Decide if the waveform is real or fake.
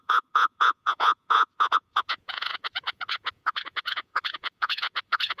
fake